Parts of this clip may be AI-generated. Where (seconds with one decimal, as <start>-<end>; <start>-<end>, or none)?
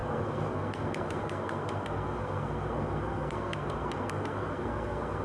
0.0-5.2